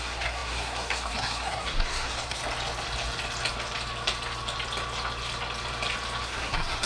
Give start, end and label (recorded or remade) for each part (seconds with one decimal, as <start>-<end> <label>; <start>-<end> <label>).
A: 0.0-2.4 remade; 2.4-6.2 recorded; 6.2-6.9 remade